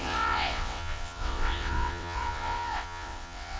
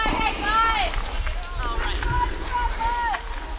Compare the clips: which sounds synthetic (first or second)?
first